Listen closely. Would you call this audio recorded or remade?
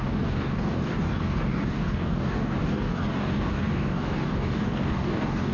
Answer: remade